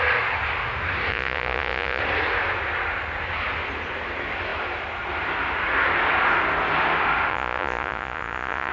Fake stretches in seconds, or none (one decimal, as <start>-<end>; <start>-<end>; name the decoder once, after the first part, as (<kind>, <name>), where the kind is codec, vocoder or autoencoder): 1.1-2.0 (vocoder, Vocos); 7.3-8.7